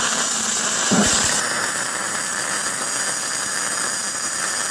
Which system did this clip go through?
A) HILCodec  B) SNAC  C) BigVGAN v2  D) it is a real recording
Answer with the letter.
C